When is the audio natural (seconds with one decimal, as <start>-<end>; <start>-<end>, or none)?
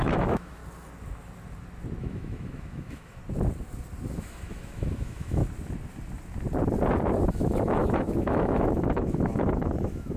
0.6-2.0; 3.2-4.1; 5.4-7.3